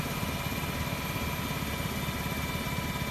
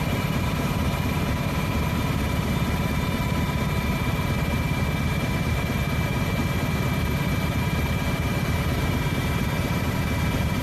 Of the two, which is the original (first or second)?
first